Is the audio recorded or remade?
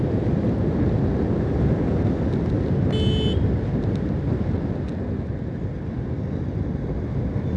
recorded